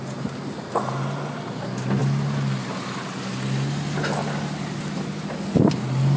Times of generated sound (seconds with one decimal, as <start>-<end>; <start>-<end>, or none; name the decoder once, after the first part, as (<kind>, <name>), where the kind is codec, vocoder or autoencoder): none